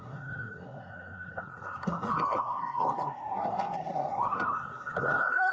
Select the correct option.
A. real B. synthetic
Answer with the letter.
B